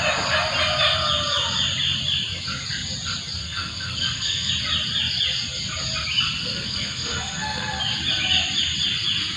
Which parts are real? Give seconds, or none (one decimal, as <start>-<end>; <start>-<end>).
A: 0.0-3.4; 4.5-6.4; 7.8-9.4